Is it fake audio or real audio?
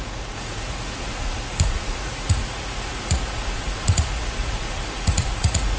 fake